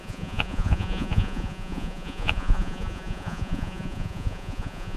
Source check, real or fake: fake